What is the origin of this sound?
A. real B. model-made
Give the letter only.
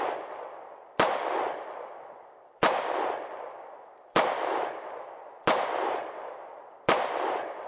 B